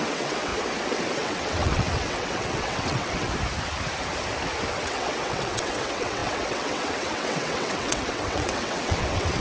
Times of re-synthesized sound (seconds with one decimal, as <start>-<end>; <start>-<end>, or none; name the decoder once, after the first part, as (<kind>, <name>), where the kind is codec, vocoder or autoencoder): 0.0-0.5 (vocoder, WaveNeXt); 1.1-3.3; 4.7-9.4